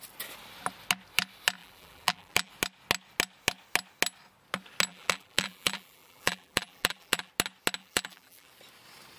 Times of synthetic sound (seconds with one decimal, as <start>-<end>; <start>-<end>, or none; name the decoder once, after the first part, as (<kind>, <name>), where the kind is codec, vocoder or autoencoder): 1.6-2.5 (vocoder, BigVGAN v2); 4.9-7.3; 7.8-8.5